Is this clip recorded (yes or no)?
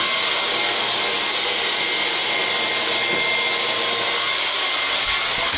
yes